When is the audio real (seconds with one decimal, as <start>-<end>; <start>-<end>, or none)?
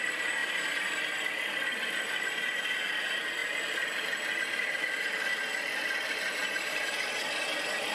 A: 0.0-6.4; 7.1-7.9